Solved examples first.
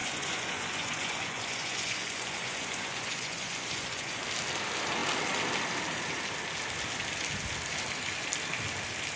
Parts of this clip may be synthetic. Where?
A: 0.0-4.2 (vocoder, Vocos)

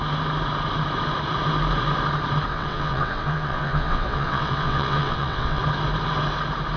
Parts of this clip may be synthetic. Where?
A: 2.5-5.6 (vocoder, WaveNeXt)

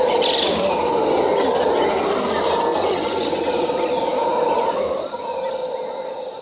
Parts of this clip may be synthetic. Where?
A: 2.7-3.4 (vocoder, Vocos)

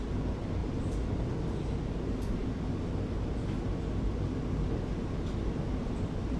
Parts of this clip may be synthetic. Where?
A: none

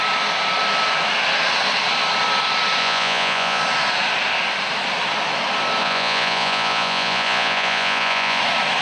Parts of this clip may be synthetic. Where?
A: 2.8-3.6 (vocoder, Vocos); 5.8-8.4

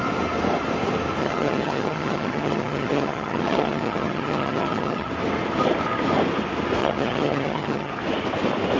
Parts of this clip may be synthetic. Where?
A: 1.2-5.1 (vocoder, HiFi-GAN); 6.8-7.9

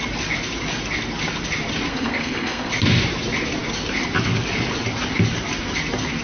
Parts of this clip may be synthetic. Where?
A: 1.9-2.7 (codec, SNAC)